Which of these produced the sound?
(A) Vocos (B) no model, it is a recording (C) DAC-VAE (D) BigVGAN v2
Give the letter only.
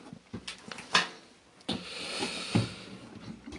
B